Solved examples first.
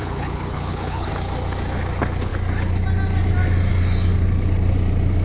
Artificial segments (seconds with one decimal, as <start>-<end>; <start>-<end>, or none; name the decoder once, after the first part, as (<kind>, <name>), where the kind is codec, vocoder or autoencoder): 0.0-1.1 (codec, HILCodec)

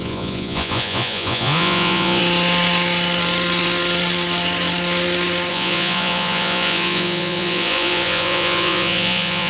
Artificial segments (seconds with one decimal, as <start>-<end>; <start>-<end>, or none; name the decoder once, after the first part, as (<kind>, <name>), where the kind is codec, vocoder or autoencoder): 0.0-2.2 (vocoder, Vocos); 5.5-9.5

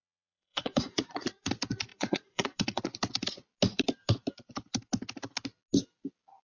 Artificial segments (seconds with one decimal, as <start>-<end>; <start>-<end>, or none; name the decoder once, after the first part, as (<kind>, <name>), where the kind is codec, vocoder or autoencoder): 0.0-1.5 (vocoder, Vocos); 1.9-2.8

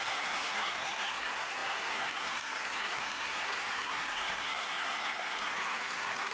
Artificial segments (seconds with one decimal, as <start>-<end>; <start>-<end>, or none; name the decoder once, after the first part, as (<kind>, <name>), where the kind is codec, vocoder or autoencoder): 0.0-6.3 (codec, SNAC)

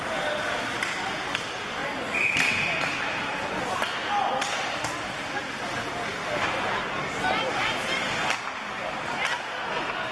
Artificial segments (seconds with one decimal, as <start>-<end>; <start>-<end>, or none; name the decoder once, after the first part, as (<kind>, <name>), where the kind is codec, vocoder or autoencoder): none